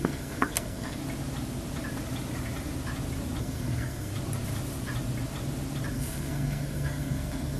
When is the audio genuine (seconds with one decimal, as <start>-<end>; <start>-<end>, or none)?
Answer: 1.0-3.4; 4.1-5.9